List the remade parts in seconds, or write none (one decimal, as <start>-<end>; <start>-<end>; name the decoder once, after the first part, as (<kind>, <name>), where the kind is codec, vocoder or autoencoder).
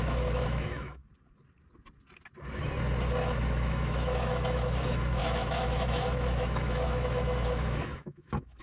0.0-1.0 (autoencoder, DAC-VAE); 3.4-8.6